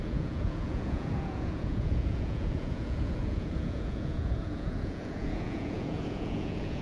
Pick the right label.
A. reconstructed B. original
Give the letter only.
A